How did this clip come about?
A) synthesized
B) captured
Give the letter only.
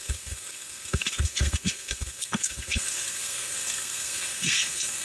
A